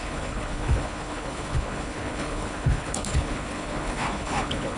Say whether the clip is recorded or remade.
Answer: remade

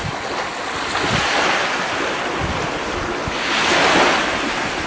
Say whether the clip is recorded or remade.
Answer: recorded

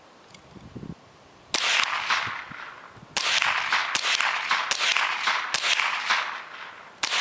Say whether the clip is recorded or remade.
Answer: recorded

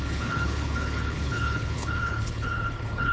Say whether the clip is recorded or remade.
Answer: remade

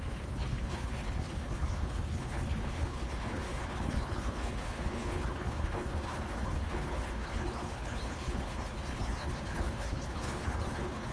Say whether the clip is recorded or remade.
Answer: remade